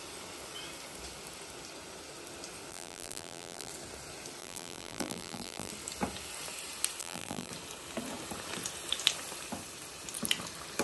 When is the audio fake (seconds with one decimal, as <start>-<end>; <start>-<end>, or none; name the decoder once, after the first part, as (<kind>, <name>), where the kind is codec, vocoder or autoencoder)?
2.7-3.7 (vocoder, BigVGAN v2); 4.4-5.7; 7.0-7.5